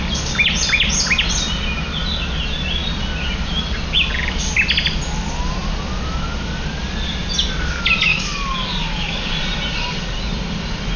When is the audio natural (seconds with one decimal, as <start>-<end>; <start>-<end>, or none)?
0.0-8.1; 9.3-11.0